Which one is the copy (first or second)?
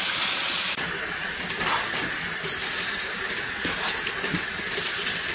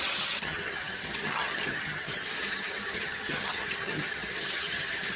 second